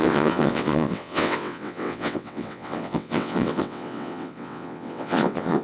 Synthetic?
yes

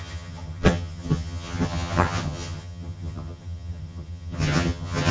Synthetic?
yes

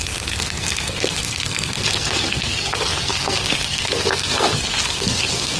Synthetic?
yes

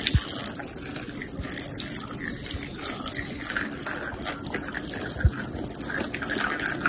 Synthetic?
no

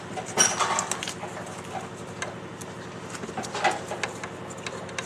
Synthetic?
no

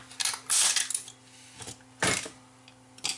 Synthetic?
no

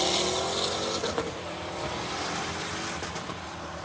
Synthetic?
no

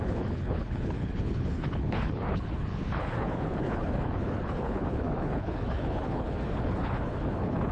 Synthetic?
yes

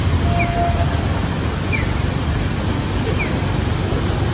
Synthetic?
no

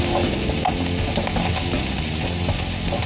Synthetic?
no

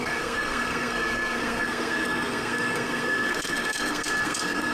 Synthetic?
yes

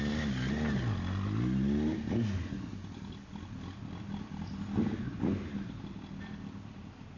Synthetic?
no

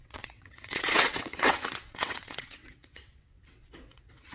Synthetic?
yes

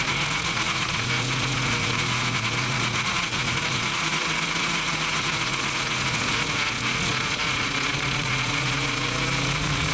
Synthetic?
yes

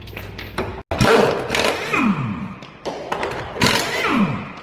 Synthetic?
no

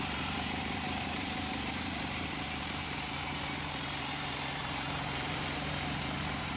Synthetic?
yes